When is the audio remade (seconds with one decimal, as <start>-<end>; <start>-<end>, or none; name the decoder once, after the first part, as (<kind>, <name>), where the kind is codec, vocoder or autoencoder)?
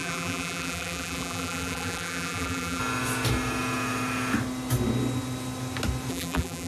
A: 0.0-2.8 (vocoder, BigVGAN v2); 6.1-6.7